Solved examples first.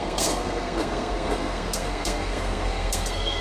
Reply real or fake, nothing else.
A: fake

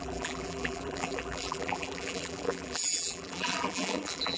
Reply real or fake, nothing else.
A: fake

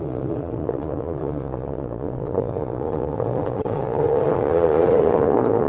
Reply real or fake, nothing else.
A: fake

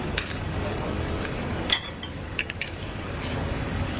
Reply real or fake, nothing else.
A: fake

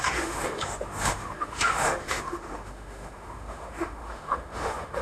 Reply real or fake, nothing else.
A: fake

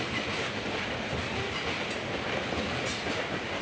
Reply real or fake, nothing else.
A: real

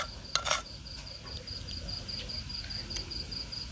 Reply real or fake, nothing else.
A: real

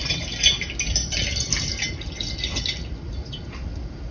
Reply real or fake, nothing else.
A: real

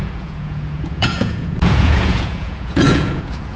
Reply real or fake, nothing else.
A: fake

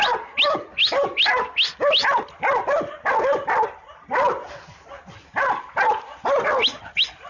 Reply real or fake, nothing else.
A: real